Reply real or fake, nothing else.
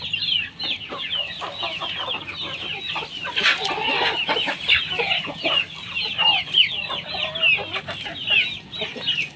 real